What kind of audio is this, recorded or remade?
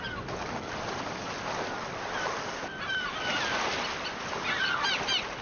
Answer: recorded